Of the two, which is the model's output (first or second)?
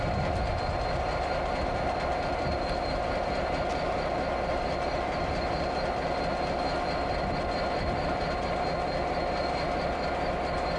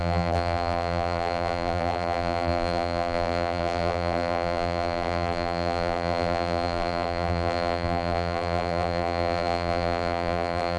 second